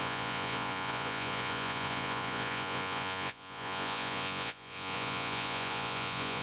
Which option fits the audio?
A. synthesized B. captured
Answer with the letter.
A